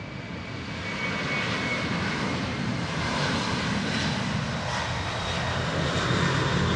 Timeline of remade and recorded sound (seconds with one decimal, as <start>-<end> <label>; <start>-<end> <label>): 0.0-1.7 recorded; 1.7-3.4 remade; 3.4-6.8 recorded